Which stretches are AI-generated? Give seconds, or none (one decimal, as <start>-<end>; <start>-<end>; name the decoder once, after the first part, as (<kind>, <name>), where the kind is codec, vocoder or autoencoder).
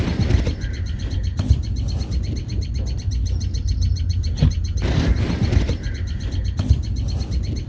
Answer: none